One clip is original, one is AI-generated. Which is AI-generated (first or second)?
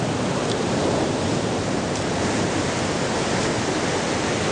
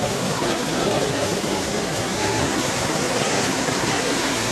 second